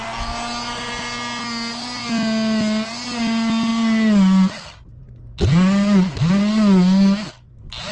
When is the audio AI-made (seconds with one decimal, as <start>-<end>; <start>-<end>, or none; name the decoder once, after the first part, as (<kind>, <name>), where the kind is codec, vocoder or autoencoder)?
none